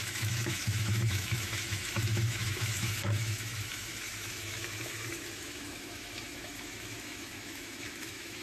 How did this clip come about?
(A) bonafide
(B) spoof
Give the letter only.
B